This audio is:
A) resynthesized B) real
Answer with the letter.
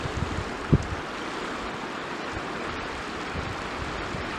B